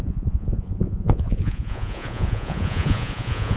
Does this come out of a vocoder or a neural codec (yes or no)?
yes